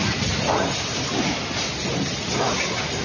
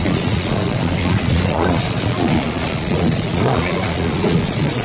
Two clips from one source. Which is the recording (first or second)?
first